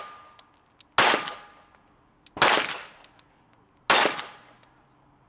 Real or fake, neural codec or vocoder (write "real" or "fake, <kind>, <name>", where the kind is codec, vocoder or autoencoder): real